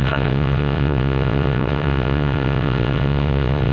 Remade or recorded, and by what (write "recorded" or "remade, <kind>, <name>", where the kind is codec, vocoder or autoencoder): remade, vocoder, WaveNeXt